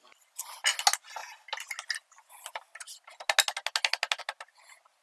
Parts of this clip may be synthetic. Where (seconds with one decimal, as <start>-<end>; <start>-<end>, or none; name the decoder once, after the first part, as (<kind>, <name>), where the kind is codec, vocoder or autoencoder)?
none